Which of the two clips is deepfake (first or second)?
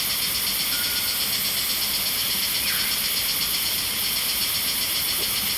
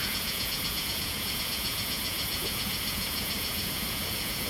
second